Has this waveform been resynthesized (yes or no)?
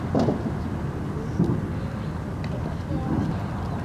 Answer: no